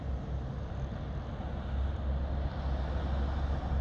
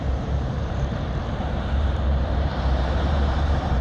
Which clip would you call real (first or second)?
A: first